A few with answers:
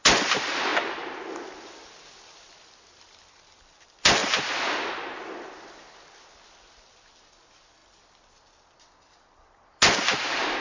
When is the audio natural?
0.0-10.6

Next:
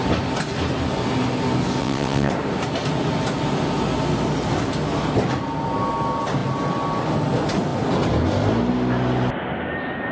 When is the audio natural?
0.0-1.8; 2.3-10.1

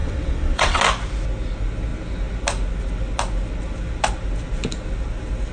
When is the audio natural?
0.8-5.5